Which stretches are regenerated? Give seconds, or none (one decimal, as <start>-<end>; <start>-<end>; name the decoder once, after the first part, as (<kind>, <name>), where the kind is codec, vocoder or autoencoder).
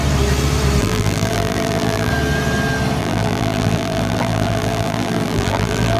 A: 0.8-2.1 (vocoder, BigVGAN v2); 3.0-6.0